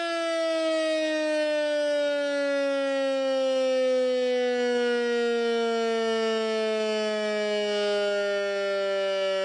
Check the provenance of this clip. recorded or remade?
recorded